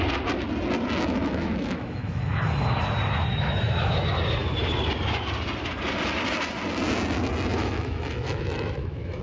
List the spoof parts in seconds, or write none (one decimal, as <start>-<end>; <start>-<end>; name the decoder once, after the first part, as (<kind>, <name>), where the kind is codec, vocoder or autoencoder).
1.2-2.2 (autoencoder, DAC-VAE); 3.3-3.9; 7.5-9.2

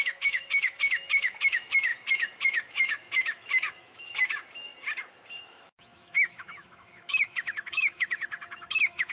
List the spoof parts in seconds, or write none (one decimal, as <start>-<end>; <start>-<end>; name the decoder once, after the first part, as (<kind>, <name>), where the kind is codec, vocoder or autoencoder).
0.0-4.7 (autoencoder, DAC-VAE); 5.4-9.1

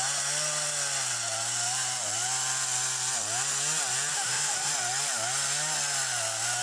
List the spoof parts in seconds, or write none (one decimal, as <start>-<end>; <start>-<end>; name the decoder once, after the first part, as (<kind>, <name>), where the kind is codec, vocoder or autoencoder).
4.1-4.7 (autoencoder, DAC-VAE)

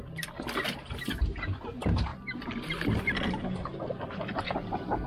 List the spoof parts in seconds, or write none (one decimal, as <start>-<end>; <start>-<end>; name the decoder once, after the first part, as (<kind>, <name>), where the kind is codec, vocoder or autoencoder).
none

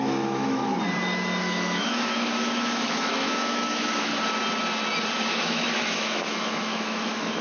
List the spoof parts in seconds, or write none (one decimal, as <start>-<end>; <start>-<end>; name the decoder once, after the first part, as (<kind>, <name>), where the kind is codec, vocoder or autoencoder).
0.0-0.7 (autoencoder, DAC-VAE); 1.4-4.1; 5.4-7.4

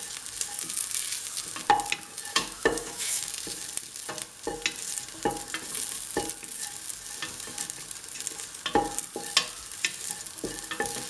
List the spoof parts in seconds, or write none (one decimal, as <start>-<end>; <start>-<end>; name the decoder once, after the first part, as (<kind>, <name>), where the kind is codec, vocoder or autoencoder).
2.3-3.3 (autoencoder, DAC-VAE)

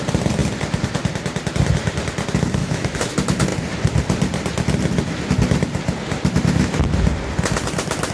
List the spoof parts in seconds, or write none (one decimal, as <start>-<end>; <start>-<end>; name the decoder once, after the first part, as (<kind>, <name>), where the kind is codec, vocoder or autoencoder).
2.6-3.1 (autoencoder, DAC-VAE)